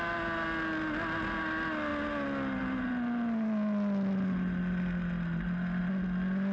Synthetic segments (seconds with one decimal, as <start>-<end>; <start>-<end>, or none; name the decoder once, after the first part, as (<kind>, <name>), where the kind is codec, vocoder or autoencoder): none